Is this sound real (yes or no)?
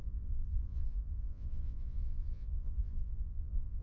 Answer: no